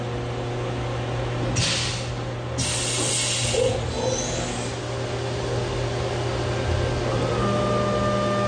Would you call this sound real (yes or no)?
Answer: yes